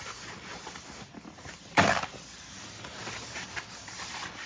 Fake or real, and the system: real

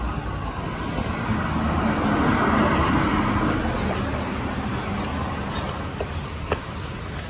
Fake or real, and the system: real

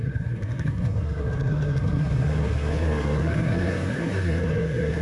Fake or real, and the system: fake, codec, SNAC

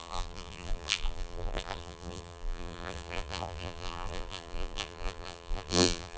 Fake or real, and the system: fake, vocoder, BigVGAN v2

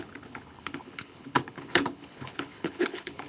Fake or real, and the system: fake, codec, HILCodec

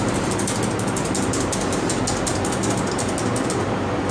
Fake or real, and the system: real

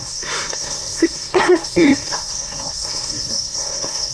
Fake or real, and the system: fake, codec, SNAC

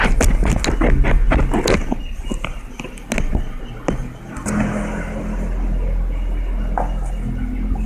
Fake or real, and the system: real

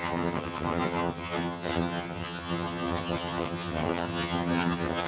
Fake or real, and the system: fake, vocoder, HiFi-GAN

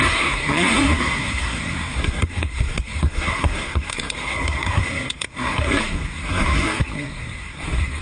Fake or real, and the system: fake, codec, SNAC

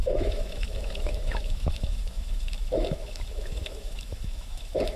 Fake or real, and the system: fake, autoencoder, DAC-VAE